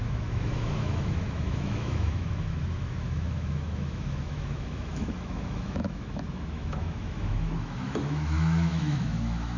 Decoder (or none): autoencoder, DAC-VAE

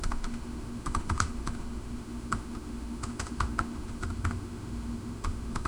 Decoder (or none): autoencoder, DAC-VAE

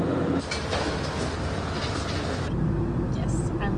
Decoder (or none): none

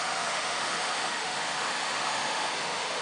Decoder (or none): autoencoder, DAC-VAE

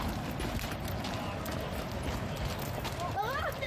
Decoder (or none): none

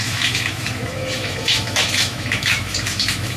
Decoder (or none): autoencoder, DAC-VAE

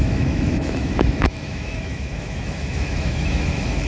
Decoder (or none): autoencoder, DAC-VAE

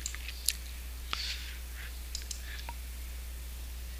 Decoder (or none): none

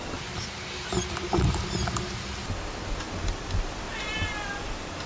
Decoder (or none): none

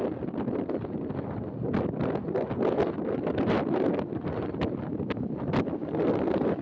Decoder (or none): none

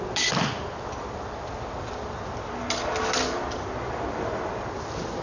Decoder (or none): none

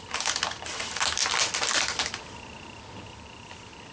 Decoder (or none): none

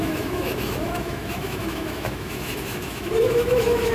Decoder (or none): autoencoder, DAC-VAE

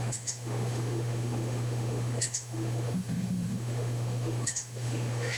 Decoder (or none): autoencoder, DAC-VAE